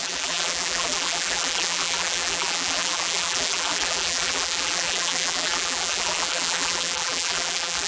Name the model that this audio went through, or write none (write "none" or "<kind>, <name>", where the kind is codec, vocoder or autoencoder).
vocoder, BigVGAN v2